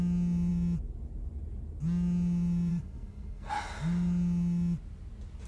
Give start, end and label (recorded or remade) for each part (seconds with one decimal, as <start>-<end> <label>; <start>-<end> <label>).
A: 0.0-2.7 recorded; 2.7-3.5 remade; 3.5-5.5 recorded